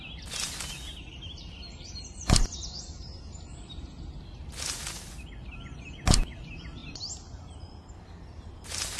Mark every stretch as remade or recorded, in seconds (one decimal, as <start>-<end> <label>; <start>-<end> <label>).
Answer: 0.0-6.8 recorded; 6.8-8.2 remade; 8.2-9.0 recorded